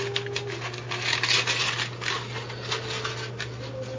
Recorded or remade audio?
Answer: recorded